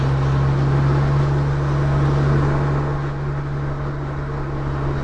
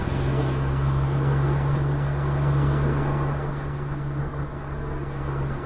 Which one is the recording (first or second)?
first